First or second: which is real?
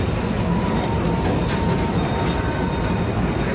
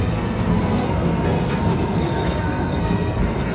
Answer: first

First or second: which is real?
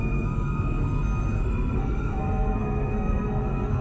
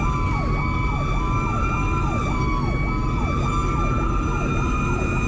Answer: second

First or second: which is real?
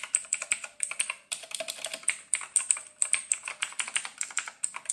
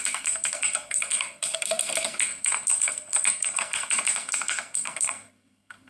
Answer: first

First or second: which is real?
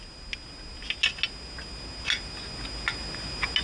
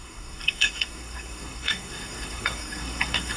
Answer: first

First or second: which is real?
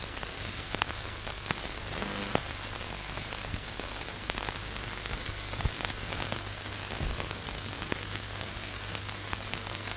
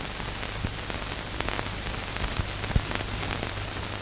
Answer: second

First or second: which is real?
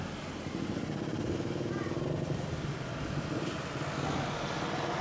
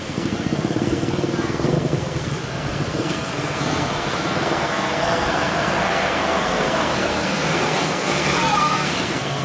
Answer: first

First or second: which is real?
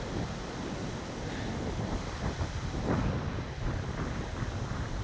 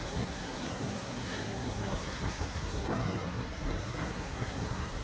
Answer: first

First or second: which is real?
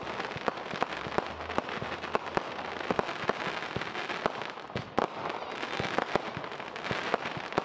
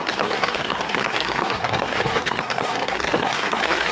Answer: first